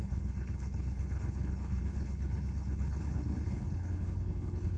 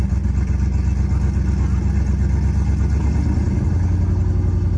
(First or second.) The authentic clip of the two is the second